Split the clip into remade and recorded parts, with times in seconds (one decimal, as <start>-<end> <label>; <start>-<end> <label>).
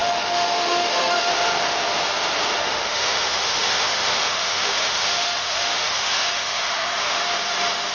0.0-1.3 remade; 1.3-2.5 recorded; 2.5-7.2 remade; 7.2-7.9 recorded